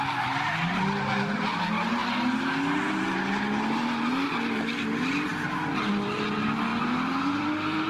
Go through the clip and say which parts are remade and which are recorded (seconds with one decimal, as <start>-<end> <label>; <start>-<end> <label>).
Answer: 0.0-7.9 recorded